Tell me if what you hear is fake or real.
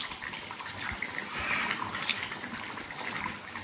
real